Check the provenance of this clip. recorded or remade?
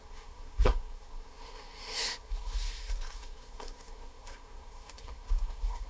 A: remade